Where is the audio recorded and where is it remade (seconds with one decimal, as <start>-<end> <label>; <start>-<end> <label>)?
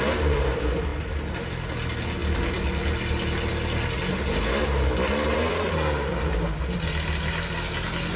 0.0-8.2 recorded